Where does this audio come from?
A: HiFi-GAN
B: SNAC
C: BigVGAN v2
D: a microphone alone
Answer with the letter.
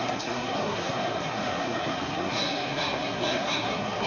B